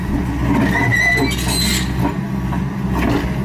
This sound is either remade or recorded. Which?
recorded